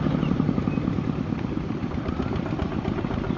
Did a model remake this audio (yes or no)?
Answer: no